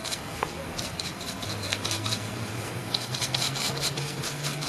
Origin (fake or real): fake